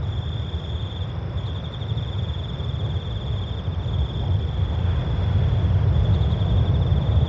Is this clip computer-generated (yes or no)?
no